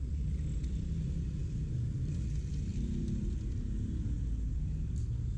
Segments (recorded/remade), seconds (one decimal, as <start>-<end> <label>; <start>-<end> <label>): 0.0-1.4 recorded; 1.4-2.2 remade; 2.2-2.7 recorded; 2.7-3.6 remade; 3.6-5.4 recorded